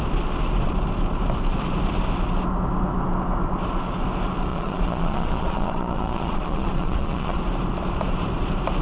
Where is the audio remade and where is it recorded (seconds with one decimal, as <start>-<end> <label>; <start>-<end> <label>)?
0.0-4.5 recorded; 4.5-7.4 remade; 7.4-8.8 recorded